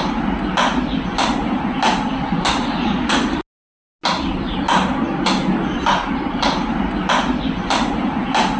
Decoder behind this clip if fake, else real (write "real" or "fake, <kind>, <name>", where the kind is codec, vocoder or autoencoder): real